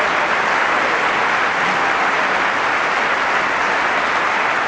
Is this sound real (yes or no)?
yes